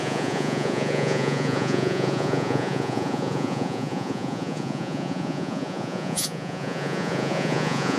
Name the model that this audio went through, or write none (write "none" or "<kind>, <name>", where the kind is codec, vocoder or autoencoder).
vocoder, Vocos